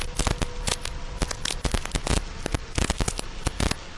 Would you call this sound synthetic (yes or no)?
no